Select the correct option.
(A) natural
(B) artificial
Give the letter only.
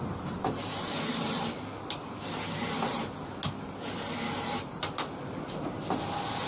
A